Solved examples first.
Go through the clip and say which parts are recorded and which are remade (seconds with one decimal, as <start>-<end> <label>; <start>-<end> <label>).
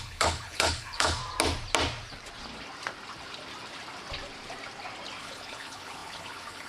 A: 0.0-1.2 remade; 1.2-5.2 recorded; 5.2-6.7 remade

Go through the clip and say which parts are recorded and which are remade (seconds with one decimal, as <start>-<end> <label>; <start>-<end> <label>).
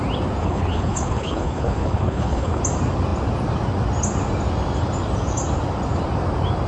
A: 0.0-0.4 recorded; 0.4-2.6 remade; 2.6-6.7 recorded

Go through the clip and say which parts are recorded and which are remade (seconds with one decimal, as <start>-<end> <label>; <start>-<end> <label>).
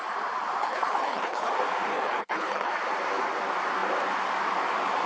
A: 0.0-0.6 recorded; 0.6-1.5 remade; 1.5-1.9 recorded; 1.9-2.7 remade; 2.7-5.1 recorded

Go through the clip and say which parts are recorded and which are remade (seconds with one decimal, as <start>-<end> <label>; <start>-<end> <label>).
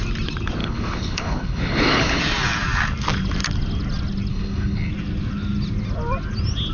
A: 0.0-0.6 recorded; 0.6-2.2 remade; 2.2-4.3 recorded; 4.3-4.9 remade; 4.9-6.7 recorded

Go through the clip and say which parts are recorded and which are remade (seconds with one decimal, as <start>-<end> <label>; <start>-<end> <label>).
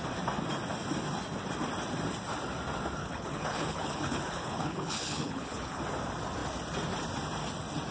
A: 0.0-3.0 recorded; 3.0-5.8 remade; 5.8-7.9 recorded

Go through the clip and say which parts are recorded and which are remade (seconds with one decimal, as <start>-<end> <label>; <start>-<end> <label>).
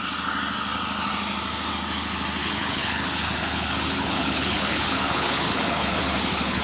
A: 0.0-2.4 recorded; 2.4-6.6 remade